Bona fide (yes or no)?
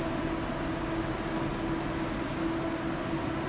yes